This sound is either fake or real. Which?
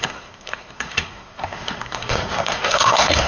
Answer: fake